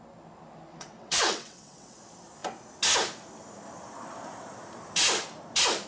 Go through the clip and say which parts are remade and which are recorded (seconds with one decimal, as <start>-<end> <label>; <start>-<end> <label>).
0.0-0.7 recorded; 0.7-2.0 remade; 2.0-5.9 recorded